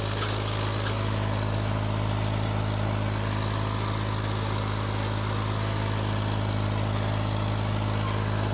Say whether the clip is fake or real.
real